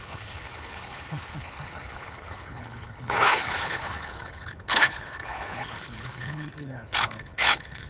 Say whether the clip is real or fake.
fake